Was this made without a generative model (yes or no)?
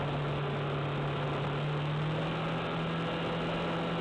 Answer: yes